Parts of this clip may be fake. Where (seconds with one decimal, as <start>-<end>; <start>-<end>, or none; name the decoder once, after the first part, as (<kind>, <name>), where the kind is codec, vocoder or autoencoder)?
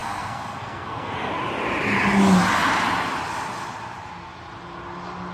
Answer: 0.0-1.3 (codec, SNAC)